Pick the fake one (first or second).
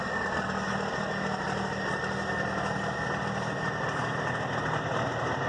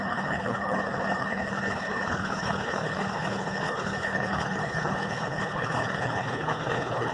second